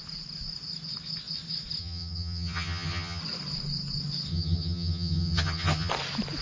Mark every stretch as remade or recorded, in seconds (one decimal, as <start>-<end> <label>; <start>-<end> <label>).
0.0-1.8 recorded; 1.8-3.2 remade; 3.2-4.3 recorded; 4.3-5.9 remade; 5.9-6.4 recorded